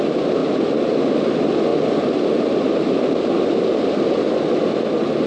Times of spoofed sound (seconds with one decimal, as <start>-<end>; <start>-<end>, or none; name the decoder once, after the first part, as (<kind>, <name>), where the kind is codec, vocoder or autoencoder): none